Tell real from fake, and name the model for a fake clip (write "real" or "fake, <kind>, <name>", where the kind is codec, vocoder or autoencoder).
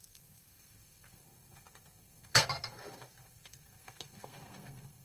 fake, codec, SNAC